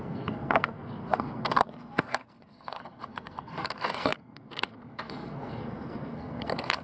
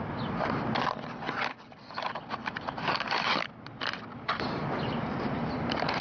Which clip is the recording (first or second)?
second